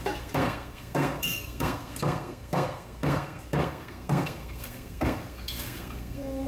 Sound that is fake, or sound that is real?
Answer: fake